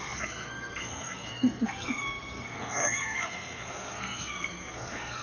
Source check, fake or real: fake